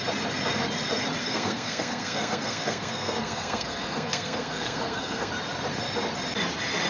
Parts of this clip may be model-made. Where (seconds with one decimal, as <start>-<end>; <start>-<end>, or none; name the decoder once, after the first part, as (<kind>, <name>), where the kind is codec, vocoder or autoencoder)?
1.2-5.3 (codec, SNAC)